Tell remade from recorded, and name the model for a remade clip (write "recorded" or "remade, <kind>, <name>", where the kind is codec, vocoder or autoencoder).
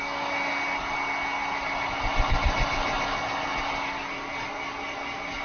recorded